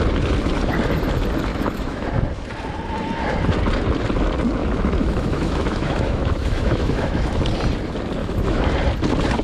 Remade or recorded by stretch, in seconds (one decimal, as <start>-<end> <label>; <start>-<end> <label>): 0.0-1.5 recorded; 1.5-2.1 remade; 2.1-4.6 recorded; 4.6-7.4 remade; 7.4-8.2 recorded; 8.2-8.7 remade; 8.7-9.4 recorded